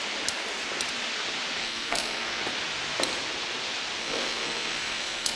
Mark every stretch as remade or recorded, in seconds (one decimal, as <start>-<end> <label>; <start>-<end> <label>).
0.0-1.6 recorded; 1.6-2.4 remade; 2.4-4.0 recorded; 4.0-5.4 remade